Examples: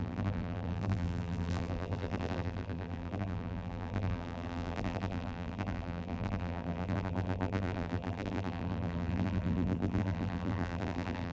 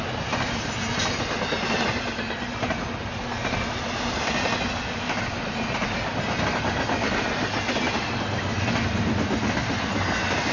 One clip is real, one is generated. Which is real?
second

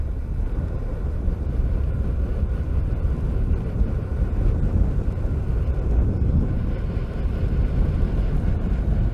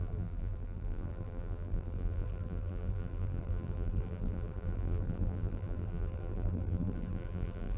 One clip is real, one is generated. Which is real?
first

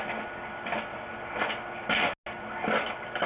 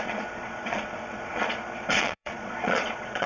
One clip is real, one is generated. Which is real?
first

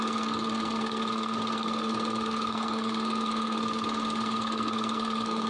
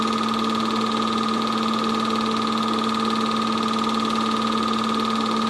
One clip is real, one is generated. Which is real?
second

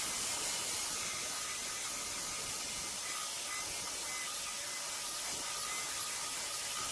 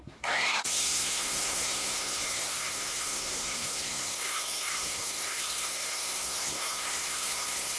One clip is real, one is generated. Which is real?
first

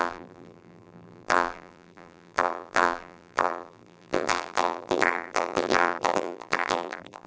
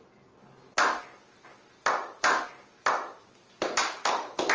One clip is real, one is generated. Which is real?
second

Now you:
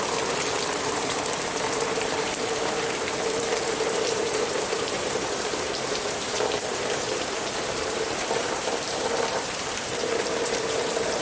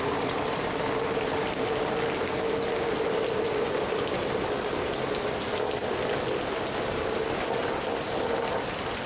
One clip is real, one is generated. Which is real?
second